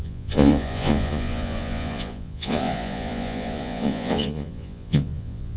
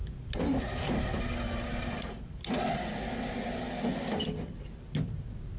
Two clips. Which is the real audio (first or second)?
second